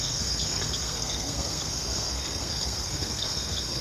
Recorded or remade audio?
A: remade